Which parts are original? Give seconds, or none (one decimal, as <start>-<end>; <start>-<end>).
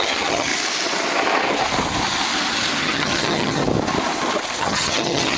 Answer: 0.5-2.8; 3.6-4.6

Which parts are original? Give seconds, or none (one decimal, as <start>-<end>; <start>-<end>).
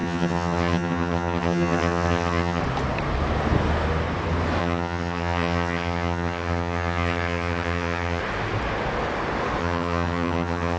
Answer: 2.6-4.6; 8.2-9.6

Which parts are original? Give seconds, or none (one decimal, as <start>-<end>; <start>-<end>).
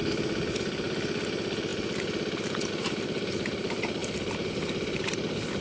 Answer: 0.0-5.6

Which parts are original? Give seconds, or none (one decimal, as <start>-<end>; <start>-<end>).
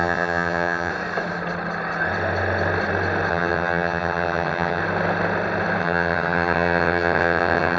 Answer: 0.9-3.3; 4.8-5.8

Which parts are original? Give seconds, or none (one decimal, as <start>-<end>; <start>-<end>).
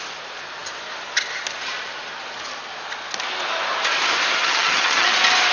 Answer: 0.0-4.3; 5.1-5.5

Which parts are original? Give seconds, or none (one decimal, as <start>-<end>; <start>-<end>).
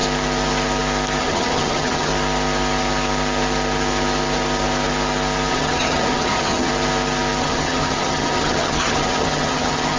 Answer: 0.0-1.2; 2.1-5.5; 6.7-7.4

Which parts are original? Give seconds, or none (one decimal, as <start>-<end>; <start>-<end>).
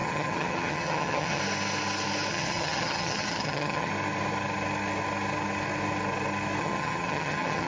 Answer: 1.4-2.3; 3.9-6.6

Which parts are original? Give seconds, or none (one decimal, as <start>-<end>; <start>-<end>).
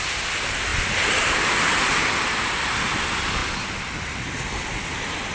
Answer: 0.0-5.3